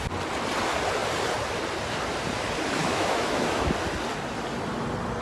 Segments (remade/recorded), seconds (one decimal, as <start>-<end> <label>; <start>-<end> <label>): 0.0-2.8 recorded; 2.8-3.7 remade; 3.7-5.2 recorded